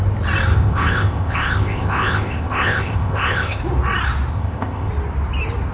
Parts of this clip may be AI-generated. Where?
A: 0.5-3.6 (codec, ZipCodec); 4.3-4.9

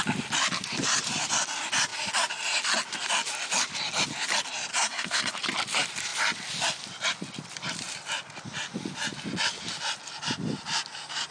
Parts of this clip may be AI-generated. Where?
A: 4.7-5.3 (codec, SNAC)

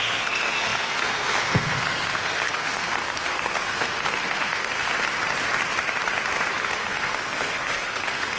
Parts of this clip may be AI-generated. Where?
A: 0.0-4.9 (codec, SNAC); 6.6-8.4

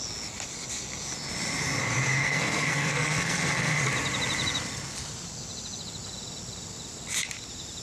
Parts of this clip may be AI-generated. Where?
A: 2.2-3.8 (codec, SNAC)